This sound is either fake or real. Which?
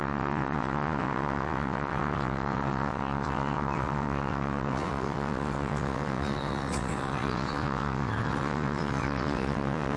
fake